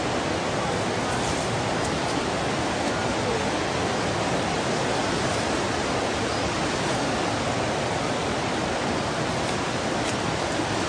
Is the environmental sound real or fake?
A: real